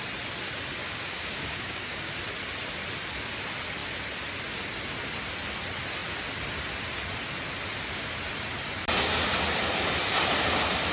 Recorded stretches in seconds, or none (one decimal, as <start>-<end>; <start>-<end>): 0.0-0.8; 2.2-10.9